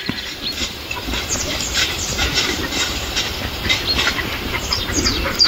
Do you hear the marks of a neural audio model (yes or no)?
yes